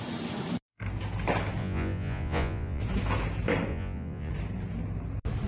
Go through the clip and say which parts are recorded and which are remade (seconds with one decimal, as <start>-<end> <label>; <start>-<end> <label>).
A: 0.0-1.6 recorded; 1.6-2.8 remade; 2.8-3.7 recorded; 3.7-4.3 remade; 4.3-5.5 recorded